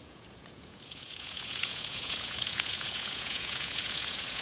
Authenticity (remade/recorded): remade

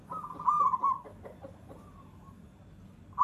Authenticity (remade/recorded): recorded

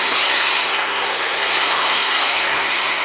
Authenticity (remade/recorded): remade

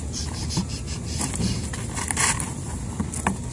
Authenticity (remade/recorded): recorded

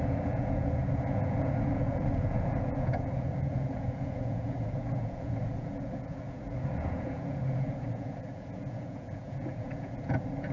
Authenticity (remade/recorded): remade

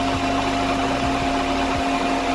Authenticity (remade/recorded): recorded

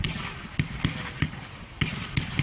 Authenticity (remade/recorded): recorded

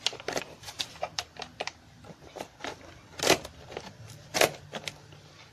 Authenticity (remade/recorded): remade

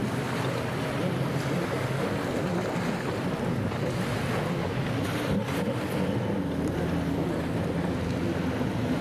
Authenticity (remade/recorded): recorded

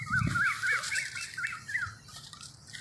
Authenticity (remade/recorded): remade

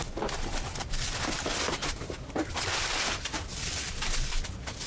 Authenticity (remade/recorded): recorded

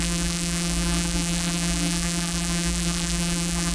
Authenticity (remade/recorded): remade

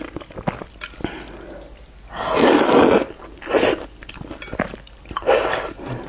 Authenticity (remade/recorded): recorded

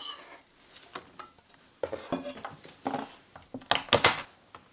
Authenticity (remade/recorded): recorded